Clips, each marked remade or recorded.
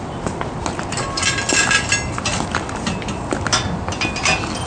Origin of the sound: recorded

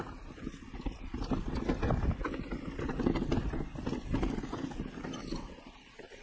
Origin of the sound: recorded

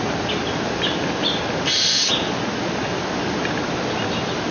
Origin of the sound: recorded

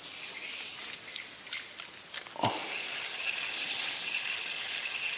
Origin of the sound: recorded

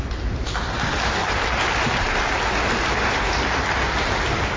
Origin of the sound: recorded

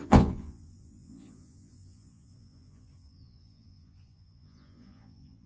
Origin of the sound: remade